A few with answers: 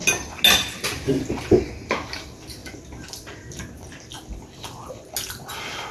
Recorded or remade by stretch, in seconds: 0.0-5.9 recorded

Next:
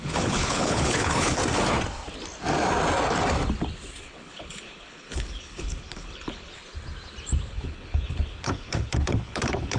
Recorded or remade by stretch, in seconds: 0.0-1.4 remade; 1.4-4.0 recorded; 4.0-6.6 remade; 6.6-7.5 recorded; 7.5-9.8 remade